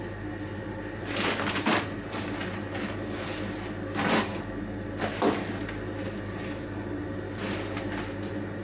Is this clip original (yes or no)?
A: yes